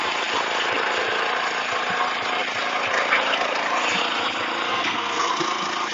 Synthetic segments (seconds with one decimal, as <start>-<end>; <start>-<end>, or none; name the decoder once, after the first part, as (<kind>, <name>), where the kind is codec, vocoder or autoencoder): 4.7-5.3 (codec, SNAC)